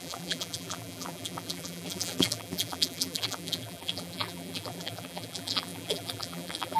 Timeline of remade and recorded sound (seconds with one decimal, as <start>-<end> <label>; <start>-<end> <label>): 0.0-6.8 remade